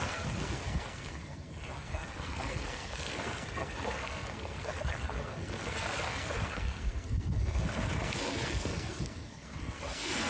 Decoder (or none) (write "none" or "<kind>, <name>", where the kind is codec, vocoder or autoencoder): codec, SNAC